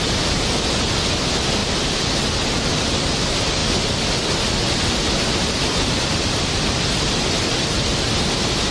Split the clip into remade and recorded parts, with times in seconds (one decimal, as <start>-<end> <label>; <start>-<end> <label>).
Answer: 0.0-8.7 recorded